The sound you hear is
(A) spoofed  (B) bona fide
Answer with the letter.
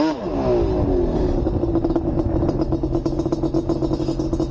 B